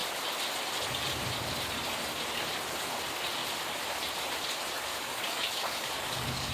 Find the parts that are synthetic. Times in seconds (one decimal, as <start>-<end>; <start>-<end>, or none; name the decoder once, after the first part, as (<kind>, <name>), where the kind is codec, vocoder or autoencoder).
4.9-6.5 (codec, DAC)